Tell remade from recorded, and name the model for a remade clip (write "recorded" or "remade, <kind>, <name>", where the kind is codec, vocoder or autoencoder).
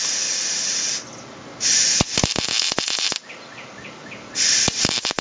recorded